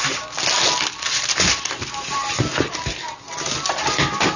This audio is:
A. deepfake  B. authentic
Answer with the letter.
B